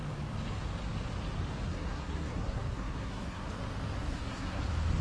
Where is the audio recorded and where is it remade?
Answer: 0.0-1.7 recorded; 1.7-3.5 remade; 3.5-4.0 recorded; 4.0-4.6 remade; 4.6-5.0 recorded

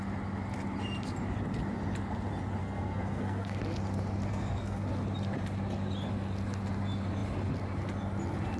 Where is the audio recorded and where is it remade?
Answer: 0.0-2.6 recorded; 2.6-3.6 remade; 3.6-4.3 recorded; 4.3-4.9 remade; 4.9-8.6 recorded

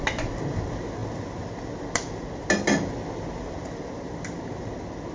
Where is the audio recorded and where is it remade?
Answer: 0.0-5.1 recorded

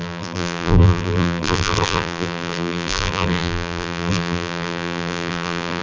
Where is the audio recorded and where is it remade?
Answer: 0.0-5.8 remade